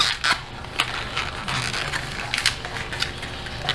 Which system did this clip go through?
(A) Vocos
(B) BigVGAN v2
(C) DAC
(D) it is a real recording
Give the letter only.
D